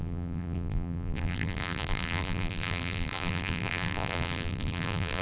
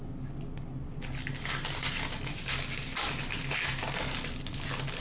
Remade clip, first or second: first